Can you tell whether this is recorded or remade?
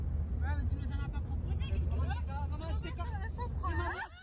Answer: recorded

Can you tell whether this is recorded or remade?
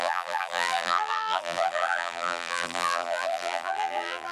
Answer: remade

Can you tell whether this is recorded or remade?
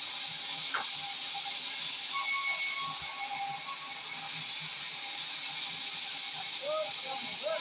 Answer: recorded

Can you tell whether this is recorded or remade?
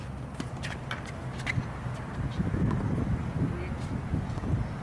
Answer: recorded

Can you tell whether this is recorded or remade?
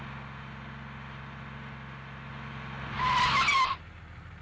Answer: recorded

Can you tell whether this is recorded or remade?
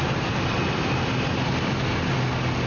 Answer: recorded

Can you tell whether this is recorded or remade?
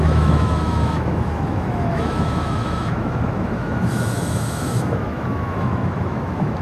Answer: remade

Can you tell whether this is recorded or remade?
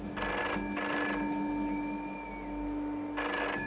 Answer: recorded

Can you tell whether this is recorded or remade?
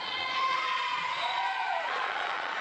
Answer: remade